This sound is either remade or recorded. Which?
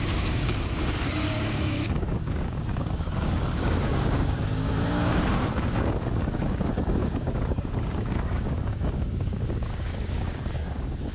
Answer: remade